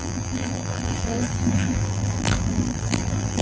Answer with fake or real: fake